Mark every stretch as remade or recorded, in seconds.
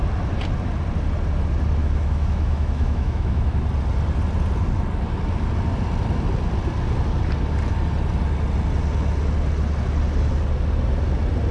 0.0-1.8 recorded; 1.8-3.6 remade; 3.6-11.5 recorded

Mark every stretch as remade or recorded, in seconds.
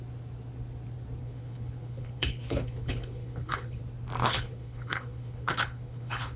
0.0-1.2 recorded; 1.2-3.8 remade; 3.8-4.2 recorded; 4.2-6.4 remade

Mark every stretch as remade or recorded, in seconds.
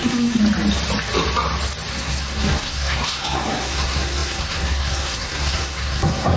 0.0-0.4 remade; 0.4-1.9 recorded; 1.9-6.4 remade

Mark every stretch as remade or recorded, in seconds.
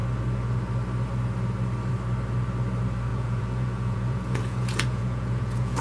0.0-3.1 recorded; 3.1-5.8 remade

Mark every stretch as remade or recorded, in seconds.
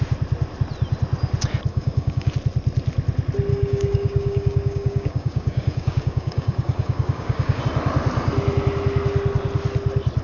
0.0-1.7 recorded; 1.7-2.3 remade; 2.3-3.5 recorded; 3.5-7.6 remade; 7.6-10.2 recorded